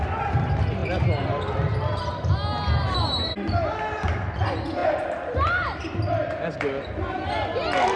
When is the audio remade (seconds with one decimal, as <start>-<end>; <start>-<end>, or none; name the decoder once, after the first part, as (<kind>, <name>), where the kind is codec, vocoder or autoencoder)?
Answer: none